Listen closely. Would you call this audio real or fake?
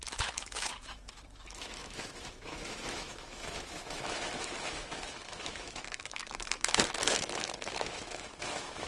fake